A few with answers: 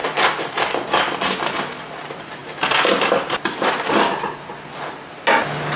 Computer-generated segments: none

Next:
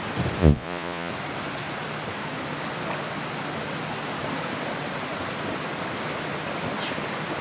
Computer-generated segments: 0.4-1.1 (vocoder, Vocos)

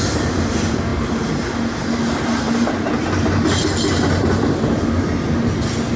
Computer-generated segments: none

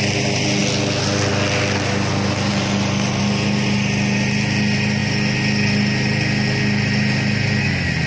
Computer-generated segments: none